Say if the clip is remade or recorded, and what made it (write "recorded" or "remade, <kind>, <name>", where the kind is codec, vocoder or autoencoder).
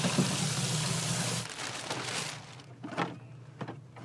recorded